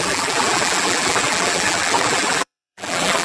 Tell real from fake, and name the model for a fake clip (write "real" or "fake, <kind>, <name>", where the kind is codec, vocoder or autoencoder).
fake, vocoder, BigVGAN v2